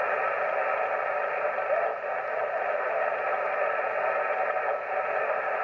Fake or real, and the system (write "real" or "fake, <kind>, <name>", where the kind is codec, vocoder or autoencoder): real